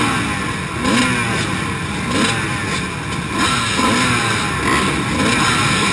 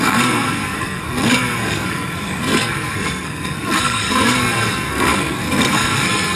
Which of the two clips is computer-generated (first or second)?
second